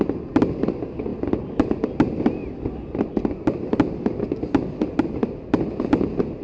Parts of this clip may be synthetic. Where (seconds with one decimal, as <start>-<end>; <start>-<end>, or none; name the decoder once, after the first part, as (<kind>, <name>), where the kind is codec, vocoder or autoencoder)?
1.1-1.7 (vocoder, BigVGAN v2); 2.4-5.0